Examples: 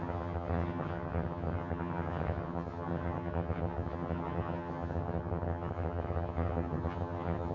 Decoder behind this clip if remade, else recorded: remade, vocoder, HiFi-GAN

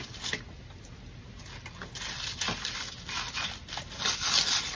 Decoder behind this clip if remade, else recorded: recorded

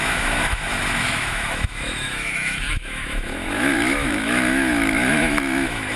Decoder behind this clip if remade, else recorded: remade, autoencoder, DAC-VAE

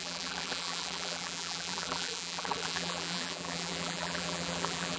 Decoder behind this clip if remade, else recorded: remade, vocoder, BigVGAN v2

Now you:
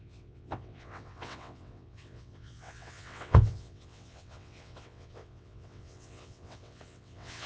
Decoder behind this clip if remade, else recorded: remade, vocoder, WaveNeXt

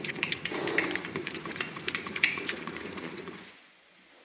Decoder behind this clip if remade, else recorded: remade, vocoder, Vocos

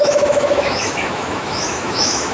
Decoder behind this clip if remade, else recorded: remade, autoencoder, DAC-VAE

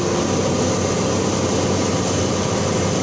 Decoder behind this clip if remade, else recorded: recorded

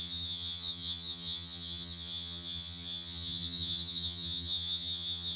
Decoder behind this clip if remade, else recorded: remade, vocoder, HiFi-GAN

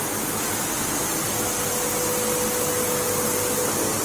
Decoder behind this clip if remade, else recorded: recorded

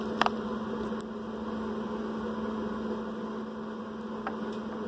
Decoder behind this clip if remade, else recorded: recorded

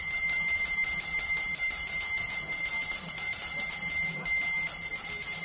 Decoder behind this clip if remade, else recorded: recorded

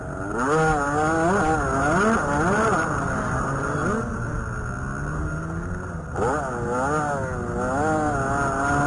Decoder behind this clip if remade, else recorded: recorded